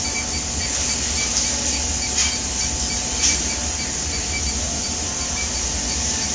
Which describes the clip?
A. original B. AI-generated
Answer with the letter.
A